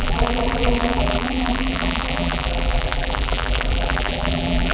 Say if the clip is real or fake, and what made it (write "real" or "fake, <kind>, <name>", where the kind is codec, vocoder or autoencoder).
fake, vocoder, BigVGAN v2